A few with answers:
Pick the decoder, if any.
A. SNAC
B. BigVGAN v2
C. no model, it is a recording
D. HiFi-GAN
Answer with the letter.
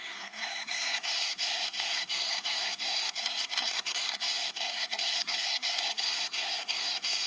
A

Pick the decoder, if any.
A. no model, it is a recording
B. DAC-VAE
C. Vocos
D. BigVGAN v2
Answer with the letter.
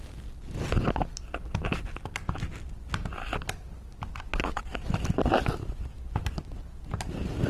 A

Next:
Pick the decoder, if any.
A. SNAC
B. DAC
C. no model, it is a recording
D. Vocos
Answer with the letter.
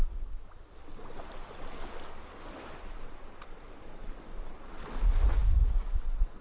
C